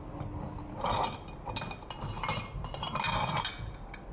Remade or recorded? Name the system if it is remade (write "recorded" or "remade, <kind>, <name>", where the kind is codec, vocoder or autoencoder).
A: recorded